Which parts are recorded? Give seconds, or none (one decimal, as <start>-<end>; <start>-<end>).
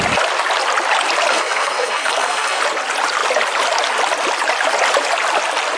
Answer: 0.0-1.3; 2.6-5.8